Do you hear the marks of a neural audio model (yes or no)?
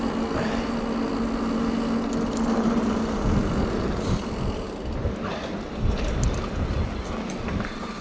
no